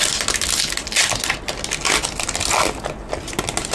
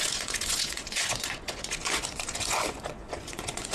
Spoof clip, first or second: second